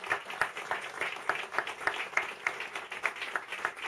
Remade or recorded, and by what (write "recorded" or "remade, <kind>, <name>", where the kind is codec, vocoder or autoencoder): recorded